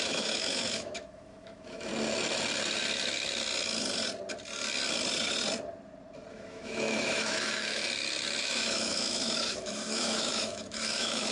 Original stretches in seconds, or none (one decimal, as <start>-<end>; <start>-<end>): 1.9-6.3; 7.8-8.4